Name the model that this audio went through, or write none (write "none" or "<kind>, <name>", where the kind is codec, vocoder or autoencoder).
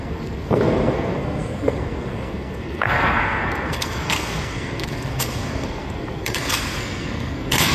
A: codec, SNAC